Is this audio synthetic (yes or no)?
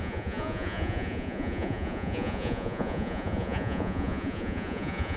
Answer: yes